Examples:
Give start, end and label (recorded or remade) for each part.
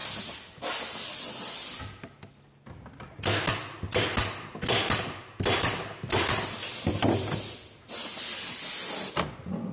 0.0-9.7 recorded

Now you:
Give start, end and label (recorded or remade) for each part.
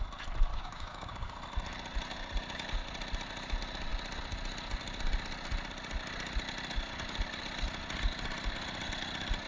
0.0-0.5 recorded; 0.5-1.3 remade; 1.3-9.5 recorded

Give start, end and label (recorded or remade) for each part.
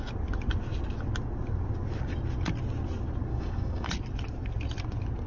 0.0-3.3 recorded; 3.3-3.9 remade; 3.9-5.3 recorded